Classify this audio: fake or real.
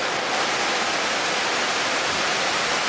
real